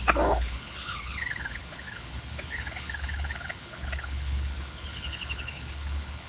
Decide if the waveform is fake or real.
fake